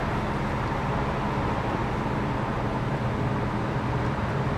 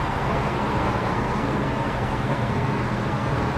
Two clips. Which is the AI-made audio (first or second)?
second